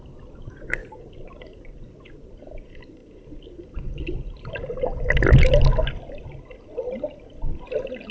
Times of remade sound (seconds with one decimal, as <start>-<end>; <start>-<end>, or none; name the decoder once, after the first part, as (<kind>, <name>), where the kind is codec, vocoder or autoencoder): none